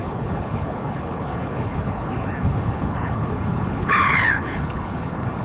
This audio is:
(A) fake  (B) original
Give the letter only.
A